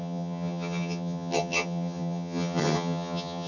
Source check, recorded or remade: remade